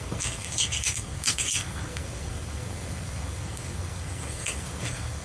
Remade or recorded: remade